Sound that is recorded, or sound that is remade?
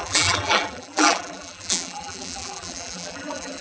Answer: remade